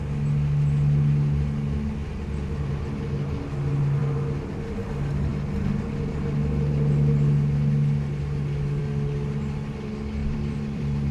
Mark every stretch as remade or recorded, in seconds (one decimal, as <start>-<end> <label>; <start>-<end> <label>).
0.0-10.2 recorded; 10.2-11.1 remade